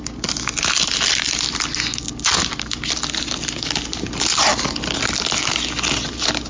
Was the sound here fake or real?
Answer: real